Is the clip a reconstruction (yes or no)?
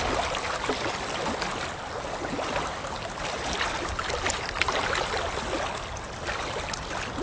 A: no